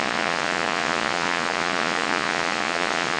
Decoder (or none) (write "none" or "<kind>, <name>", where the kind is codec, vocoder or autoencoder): vocoder, Vocos